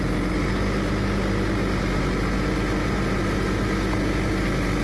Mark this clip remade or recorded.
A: recorded